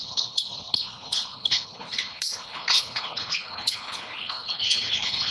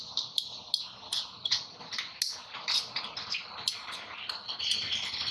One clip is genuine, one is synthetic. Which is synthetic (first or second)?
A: first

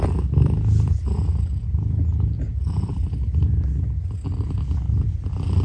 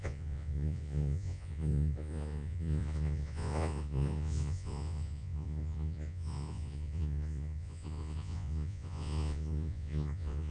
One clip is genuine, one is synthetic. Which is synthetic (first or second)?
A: second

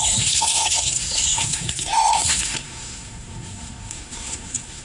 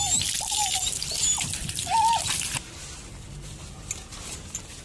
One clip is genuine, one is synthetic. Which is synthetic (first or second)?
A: first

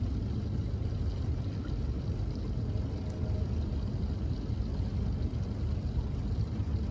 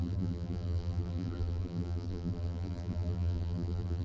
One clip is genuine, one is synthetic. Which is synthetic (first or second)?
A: second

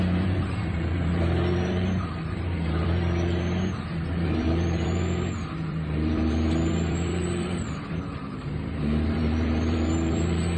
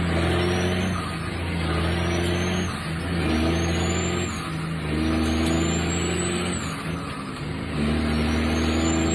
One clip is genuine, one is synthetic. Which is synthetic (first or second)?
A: first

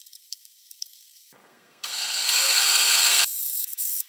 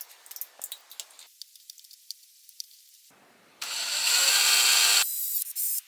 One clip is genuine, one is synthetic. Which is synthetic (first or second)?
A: first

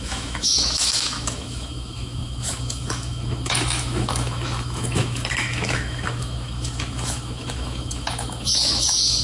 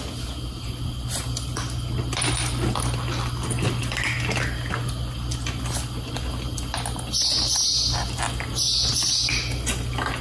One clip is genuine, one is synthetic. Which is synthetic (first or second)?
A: first